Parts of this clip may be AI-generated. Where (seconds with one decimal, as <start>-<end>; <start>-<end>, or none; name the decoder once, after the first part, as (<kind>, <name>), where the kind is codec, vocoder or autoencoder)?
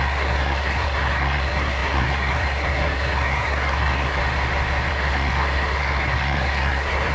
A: 0.0-4.2 (codec, SNAC); 4.9-7.1